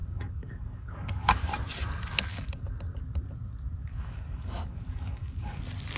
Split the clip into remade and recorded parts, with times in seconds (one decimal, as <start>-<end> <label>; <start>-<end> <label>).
0.0-1.5 remade; 1.5-2.3 recorded; 2.3-2.8 remade; 2.8-3.9 recorded; 3.9-5.6 remade; 5.6-6.0 recorded